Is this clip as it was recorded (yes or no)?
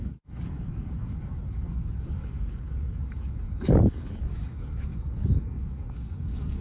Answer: no